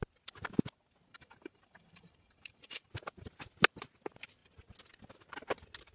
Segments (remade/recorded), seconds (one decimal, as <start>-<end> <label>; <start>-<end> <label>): 0.0-1.1 recorded; 1.1-2.9 remade; 2.9-5.9 recorded